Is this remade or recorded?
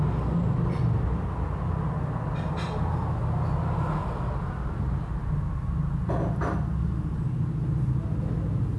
recorded